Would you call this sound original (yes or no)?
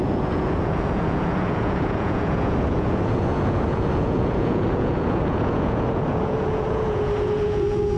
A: no